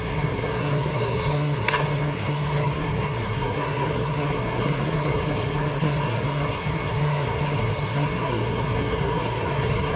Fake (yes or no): yes